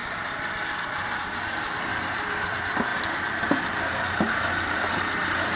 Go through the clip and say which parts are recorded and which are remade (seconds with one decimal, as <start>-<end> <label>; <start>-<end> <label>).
0.0-1.2 recorded; 1.2-1.9 remade; 1.9-2.4 recorded; 2.4-5.6 remade

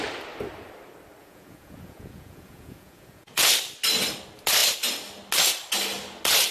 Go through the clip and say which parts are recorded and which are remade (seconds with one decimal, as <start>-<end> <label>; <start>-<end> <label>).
0.0-1.2 recorded; 1.2-3.5 remade; 3.5-6.5 recorded